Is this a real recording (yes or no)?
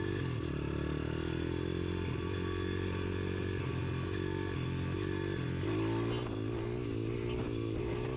yes